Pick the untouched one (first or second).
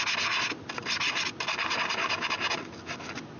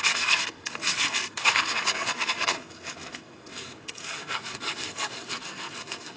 first